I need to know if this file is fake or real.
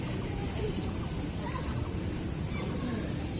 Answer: real